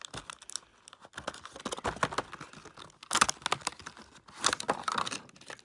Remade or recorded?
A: recorded